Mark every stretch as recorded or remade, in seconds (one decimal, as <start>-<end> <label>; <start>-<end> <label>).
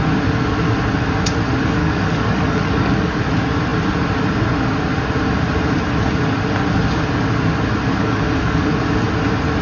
0.0-1.8 recorded; 1.8-3.2 remade; 3.2-8.0 recorded; 8.0-8.7 remade; 8.7-9.6 recorded